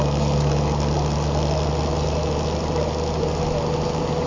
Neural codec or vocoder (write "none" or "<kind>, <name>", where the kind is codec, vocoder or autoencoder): none